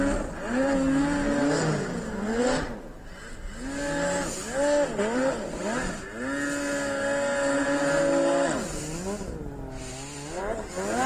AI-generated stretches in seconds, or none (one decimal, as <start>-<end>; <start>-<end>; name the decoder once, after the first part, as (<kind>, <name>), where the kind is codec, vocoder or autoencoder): none